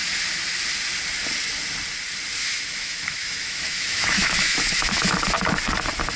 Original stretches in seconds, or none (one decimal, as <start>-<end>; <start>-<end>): 0.0-2.4; 5.2-6.2